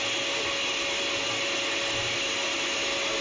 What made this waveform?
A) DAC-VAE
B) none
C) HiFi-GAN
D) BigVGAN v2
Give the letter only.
B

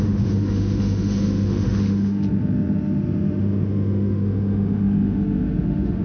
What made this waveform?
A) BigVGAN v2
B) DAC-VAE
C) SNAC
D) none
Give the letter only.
B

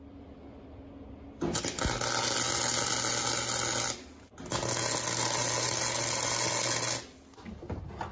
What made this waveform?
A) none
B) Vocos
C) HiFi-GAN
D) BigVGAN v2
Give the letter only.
A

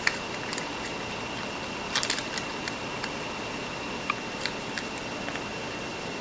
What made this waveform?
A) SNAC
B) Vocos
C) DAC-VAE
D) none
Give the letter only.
D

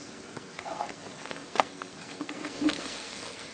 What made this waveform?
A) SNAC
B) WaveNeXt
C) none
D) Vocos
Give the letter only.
A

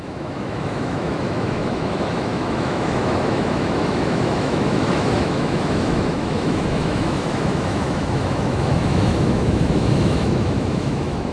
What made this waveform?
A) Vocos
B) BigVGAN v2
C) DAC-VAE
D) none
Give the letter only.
C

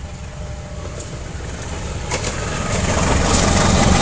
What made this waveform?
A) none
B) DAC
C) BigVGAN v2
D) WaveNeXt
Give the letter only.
A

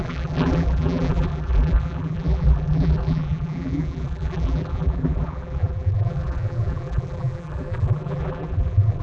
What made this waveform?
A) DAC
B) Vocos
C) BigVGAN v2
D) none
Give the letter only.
C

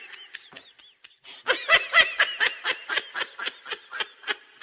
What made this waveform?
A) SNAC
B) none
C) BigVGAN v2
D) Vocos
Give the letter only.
B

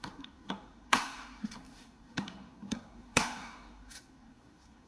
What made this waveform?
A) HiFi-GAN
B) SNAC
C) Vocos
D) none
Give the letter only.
B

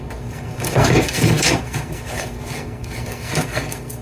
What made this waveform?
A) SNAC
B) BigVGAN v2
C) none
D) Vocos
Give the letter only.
A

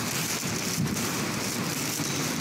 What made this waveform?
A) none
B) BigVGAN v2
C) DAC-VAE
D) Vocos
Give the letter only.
A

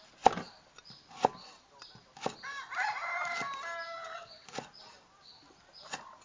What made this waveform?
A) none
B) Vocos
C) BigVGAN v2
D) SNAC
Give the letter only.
A